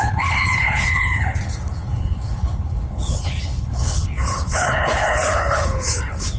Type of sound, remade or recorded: remade